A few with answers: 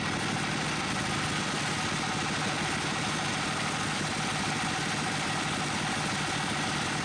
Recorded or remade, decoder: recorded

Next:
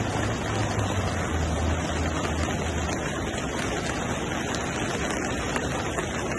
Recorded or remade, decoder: recorded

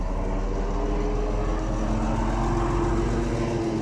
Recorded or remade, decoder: recorded